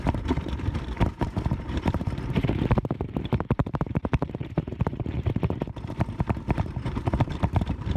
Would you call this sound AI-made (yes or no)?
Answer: yes